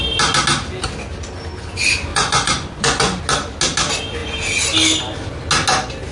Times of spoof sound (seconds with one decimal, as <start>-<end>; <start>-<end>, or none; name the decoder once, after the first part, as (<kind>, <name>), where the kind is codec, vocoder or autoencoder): 2.1-3.2 (vocoder, Vocos)